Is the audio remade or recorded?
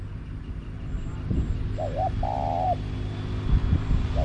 recorded